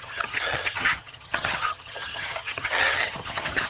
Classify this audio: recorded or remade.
remade